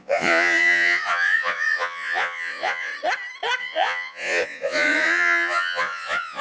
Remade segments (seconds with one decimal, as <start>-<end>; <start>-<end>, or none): 0.0-2.9; 3.6-6.4